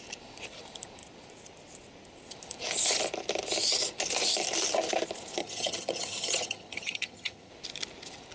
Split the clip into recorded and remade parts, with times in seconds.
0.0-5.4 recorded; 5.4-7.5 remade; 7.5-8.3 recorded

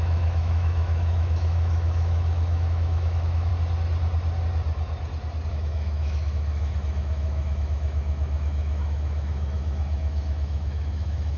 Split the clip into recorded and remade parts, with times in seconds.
0.0-3.5 remade; 3.5-5.5 recorded; 5.5-11.4 remade

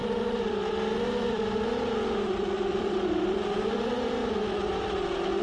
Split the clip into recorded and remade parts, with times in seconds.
0.0-5.4 remade

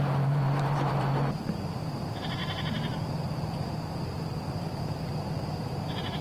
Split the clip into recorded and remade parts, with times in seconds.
0.0-6.2 remade

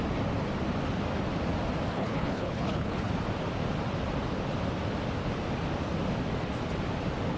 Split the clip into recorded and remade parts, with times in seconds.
0.0-1.9 recorded; 1.9-3.1 remade; 3.1-7.4 recorded

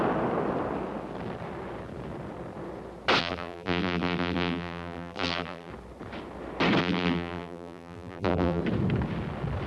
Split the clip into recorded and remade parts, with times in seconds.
0.0-3.2 recorded; 3.2-5.7 remade; 5.7-6.8 recorded; 6.8-8.6 remade; 8.6-9.7 recorded